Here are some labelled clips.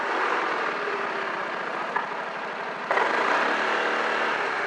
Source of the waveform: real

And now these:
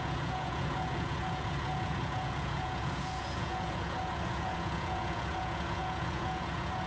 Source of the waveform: fake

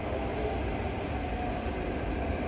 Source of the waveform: real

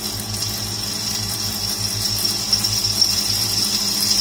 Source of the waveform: real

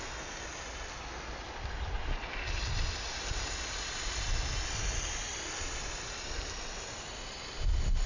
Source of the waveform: real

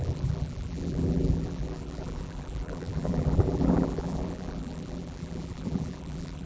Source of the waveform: fake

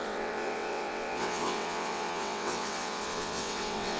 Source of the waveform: fake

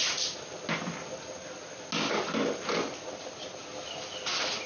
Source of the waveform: real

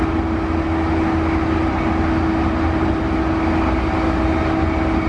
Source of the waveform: real